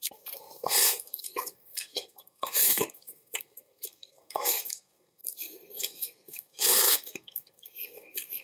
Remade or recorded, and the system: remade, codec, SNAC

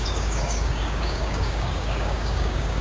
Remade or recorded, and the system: remade, codec, DAC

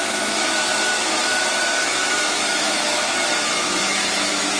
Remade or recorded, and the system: remade, autoencoder, DAC-VAE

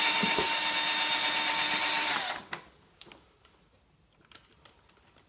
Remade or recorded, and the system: recorded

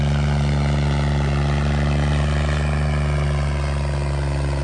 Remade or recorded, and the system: recorded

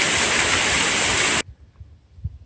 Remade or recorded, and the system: recorded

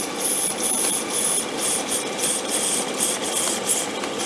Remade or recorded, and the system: recorded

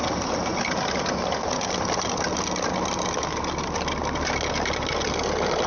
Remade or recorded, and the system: recorded